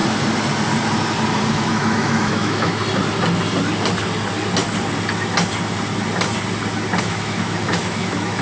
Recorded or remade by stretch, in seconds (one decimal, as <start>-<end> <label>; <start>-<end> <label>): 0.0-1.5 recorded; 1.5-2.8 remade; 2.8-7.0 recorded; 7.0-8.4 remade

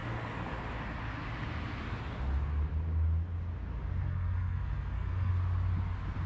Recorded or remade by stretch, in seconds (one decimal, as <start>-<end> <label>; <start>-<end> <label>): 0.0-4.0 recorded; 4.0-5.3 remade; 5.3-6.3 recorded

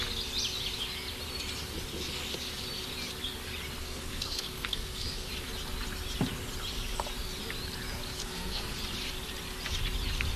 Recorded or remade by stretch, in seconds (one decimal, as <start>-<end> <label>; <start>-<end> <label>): 0.0-3.8 recorded; 3.8-5.3 remade; 5.3-8.2 recorded; 8.2-8.8 remade; 8.8-10.4 recorded

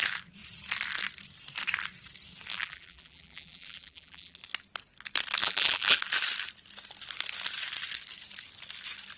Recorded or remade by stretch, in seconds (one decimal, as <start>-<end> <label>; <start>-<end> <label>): 0.0-2.5 recorded; 2.5-4.4 remade; 4.4-5.4 recorded; 5.4-6.0 remade; 6.0-9.2 recorded